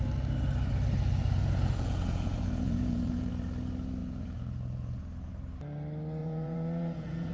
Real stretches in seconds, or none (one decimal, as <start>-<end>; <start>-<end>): 0.0-1.4; 3.3-4.0; 5.3-6.2